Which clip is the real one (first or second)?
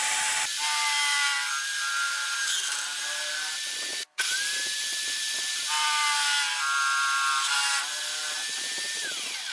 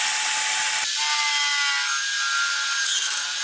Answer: second